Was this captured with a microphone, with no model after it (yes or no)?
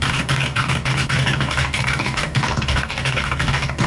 no